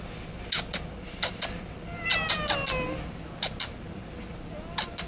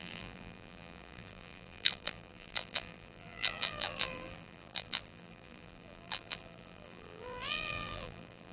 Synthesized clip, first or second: second